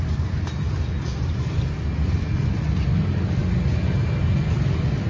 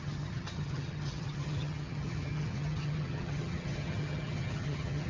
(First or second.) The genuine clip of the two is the first